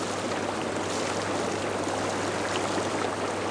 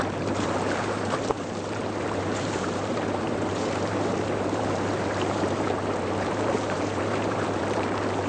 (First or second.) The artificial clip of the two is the second